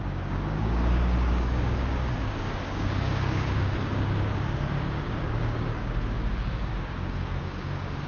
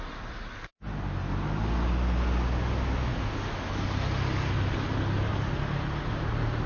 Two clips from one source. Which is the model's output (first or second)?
first